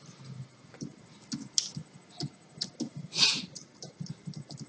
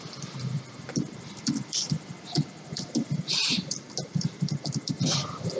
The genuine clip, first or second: first